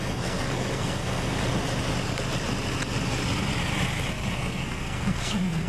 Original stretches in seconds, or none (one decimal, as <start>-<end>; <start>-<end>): 1.5-4.3